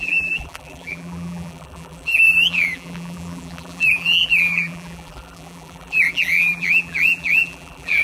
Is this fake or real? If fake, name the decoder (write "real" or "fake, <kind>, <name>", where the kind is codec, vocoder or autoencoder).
fake, vocoder, BigVGAN v2